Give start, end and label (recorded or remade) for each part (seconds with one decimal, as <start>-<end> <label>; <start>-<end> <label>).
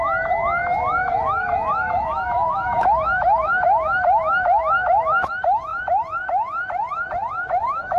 0.0-5.7 remade; 5.7-7.3 recorded; 7.3-8.0 remade